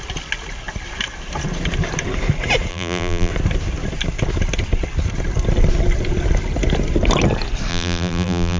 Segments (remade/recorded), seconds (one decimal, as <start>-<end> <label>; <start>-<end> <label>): 0.0-2.7 recorded; 2.7-3.3 remade; 3.3-7.7 recorded; 7.7-8.6 remade